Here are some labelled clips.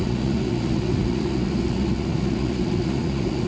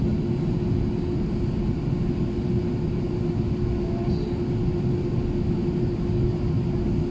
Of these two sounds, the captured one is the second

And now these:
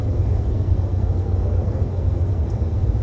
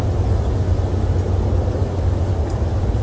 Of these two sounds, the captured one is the second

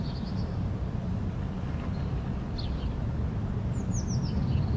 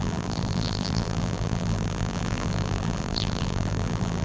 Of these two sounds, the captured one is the first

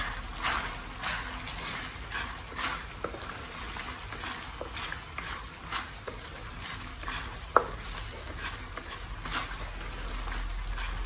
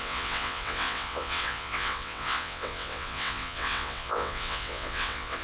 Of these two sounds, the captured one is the first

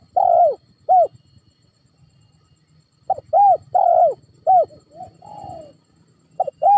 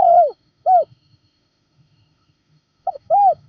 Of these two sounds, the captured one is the first